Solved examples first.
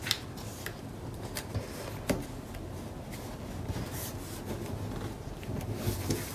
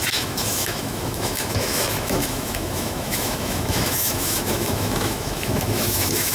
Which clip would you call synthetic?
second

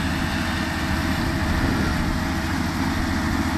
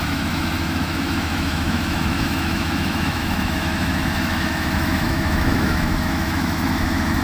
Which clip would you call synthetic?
second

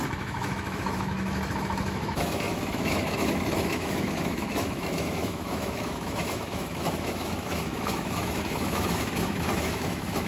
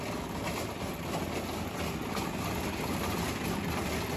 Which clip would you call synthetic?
first